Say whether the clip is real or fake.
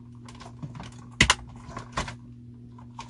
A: real